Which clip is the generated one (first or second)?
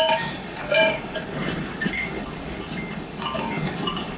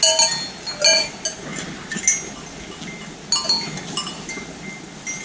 first